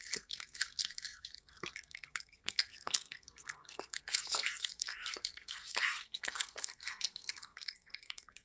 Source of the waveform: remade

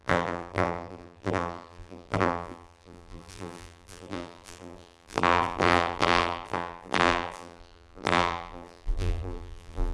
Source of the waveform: remade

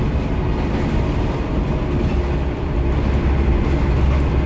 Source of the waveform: recorded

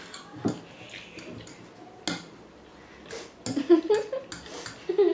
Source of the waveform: recorded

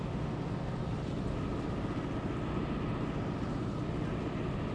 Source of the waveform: recorded